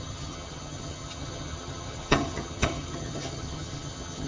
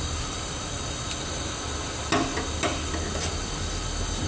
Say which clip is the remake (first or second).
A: first